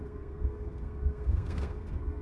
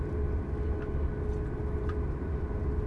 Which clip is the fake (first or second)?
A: first